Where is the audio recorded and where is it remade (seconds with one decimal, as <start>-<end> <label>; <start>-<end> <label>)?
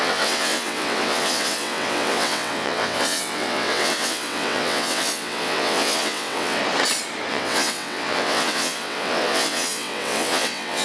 0.0-6.6 remade; 6.6-7.3 recorded; 7.3-10.8 remade